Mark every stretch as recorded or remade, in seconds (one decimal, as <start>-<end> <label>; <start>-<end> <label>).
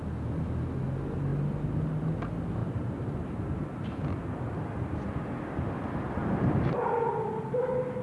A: 0.0-2.6 recorded; 2.6-3.6 remade; 3.6-6.2 recorded; 6.2-7.1 remade; 7.1-8.0 recorded